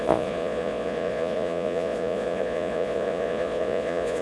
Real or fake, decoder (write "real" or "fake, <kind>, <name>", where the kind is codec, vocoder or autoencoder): fake, vocoder, Vocos